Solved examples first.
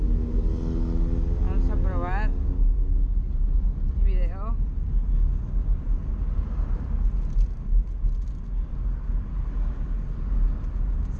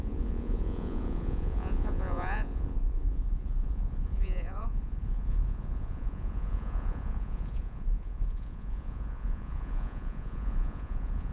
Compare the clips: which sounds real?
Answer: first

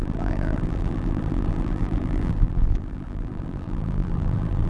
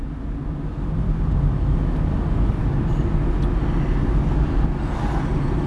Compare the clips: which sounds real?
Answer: second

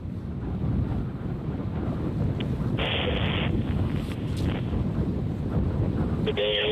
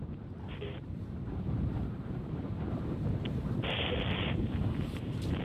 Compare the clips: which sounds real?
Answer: first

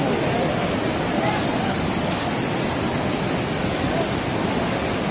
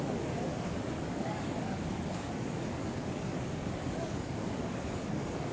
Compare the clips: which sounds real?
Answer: first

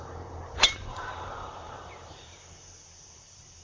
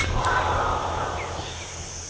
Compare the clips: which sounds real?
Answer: second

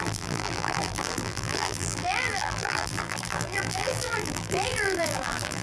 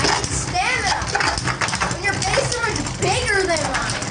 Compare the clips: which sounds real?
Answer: second